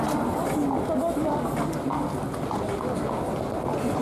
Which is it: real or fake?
real